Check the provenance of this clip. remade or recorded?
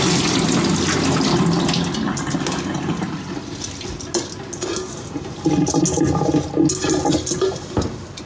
recorded